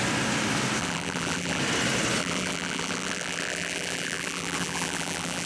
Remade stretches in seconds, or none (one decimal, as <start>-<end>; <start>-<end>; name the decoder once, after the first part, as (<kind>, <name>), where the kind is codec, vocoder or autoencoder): 0.8-1.6 (vocoder, BigVGAN v2); 2.2-5.5